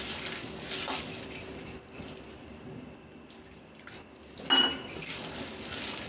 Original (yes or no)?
yes